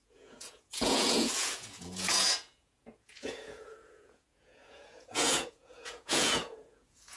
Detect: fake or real fake